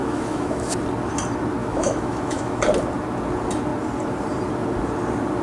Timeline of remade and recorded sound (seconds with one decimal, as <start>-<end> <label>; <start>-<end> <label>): 0.0-0.7 remade; 0.7-1.6 recorded; 1.6-2.6 remade; 2.6-5.4 recorded